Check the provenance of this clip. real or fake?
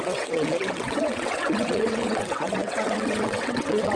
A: fake